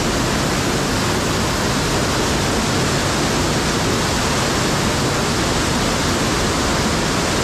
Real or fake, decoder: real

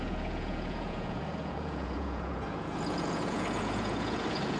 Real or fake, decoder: fake, vocoder, Vocos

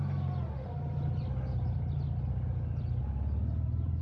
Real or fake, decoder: real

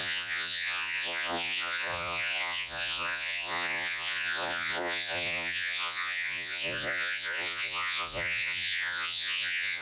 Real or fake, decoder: fake, vocoder, Vocos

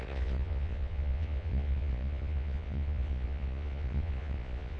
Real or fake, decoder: fake, vocoder, Vocos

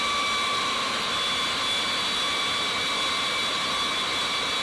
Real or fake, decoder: real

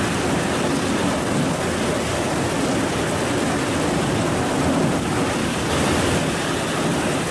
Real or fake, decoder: real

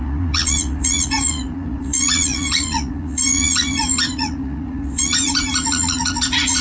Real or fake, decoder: fake, vocoder, Vocos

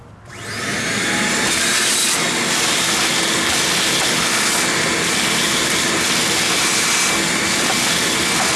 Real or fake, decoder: real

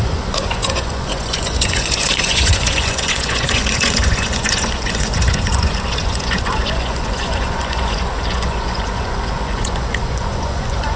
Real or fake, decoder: fake, vocoder, Vocos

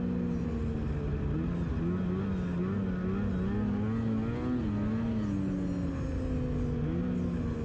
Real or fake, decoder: real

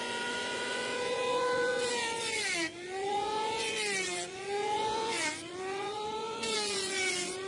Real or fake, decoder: fake, vocoder, Vocos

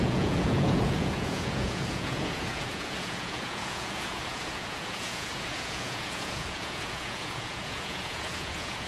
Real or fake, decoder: fake, vocoder, Vocos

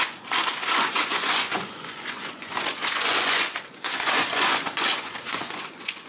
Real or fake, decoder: fake, vocoder, Vocos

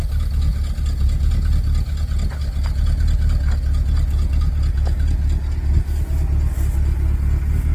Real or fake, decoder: real